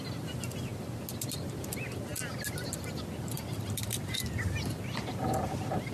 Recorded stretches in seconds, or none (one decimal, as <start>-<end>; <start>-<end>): 0.0-5.9